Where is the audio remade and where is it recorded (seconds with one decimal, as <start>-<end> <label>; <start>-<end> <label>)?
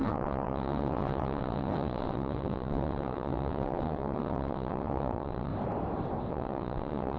0.0-5.5 remade; 5.5-6.3 recorded; 6.3-7.2 remade